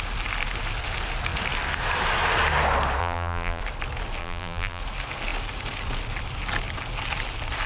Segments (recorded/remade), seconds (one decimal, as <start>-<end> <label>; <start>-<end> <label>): 0.0-3.0 recorded; 3.0-3.6 remade; 3.6-4.2 recorded; 4.2-4.8 remade; 4.8-7.7 recorded

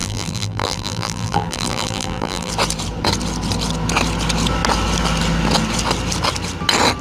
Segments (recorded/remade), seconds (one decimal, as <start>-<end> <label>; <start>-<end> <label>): 0.0-2.5 remade; 2.5-7.0 recorded